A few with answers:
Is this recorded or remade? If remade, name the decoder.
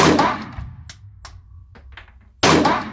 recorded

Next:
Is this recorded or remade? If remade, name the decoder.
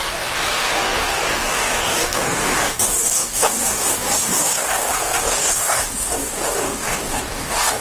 remade, codec, DAC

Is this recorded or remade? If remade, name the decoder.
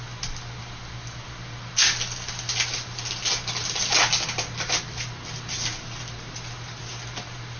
recorded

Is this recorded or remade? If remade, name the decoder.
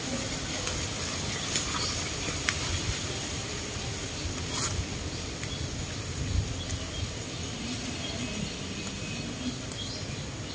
recorded